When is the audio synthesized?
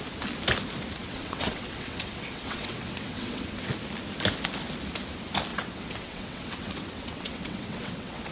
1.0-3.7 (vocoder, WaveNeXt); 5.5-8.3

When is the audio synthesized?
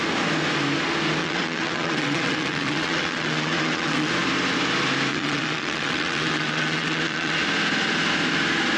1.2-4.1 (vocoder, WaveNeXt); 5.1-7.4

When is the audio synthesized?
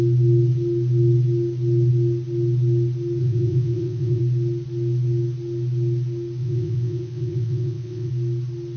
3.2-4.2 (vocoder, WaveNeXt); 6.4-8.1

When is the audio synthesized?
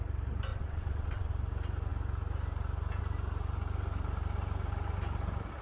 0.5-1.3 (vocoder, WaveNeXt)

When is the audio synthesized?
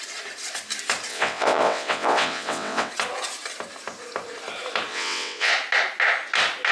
1.1-2.9 (vocoder, WaveNeXt); 4.9-5.5